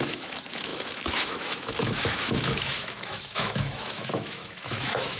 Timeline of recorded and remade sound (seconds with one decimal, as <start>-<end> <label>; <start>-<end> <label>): 0.0-5.2 remade